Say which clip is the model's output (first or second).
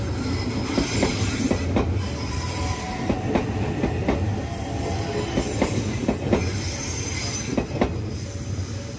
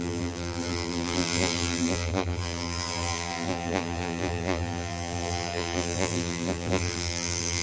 second